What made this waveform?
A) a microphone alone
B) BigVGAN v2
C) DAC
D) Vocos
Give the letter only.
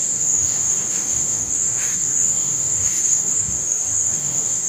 C